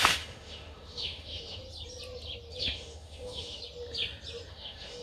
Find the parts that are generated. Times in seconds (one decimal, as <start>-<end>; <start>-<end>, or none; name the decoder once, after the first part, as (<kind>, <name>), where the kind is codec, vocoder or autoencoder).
0.0-1.6 (autoencoder, DAC-VAE); 2.6-3.6; 4.5-5.0